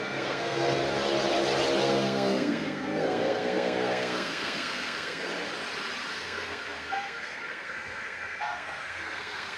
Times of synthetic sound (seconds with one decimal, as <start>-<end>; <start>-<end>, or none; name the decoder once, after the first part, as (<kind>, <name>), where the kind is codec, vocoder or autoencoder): 0.0-0.8 (codec, SNAC); 1.8-5.3; 6.1-9.6